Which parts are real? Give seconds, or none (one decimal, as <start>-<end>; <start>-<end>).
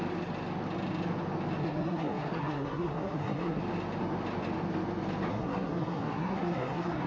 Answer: 0.0-1.6; 3.6-5.3